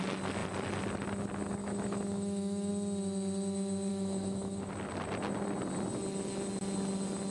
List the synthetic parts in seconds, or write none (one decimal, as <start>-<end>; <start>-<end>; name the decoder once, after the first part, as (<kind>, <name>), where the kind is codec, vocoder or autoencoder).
1.6-2.7 (autoencoder, DAC-VAE); 3.9-4.7